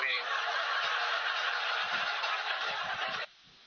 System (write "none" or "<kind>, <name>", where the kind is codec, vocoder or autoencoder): none